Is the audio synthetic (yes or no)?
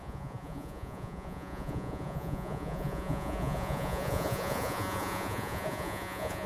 yes